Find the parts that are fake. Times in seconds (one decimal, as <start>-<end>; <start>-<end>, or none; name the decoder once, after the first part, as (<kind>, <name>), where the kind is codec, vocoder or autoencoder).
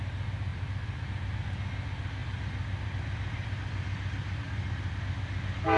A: 0.5-1.3 (vocoder, BigVGAN v2); 2.2-5.0